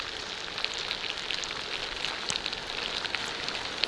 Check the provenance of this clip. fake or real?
real